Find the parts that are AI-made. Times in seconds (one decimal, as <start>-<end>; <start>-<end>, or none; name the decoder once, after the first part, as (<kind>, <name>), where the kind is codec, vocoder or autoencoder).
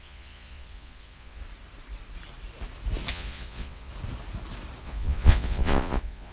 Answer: 0.0-1.4 (vocoder, Vocos); 3.1-3.9; 4.8-6.3